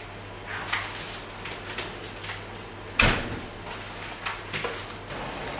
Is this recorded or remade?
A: recorded